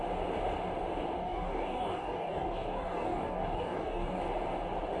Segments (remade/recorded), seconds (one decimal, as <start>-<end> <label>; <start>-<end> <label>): 0.0-1.2 recorded; 1.2-4.2 remade; 4.2-5.0 recorded